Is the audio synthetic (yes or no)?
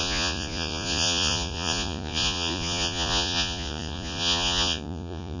yes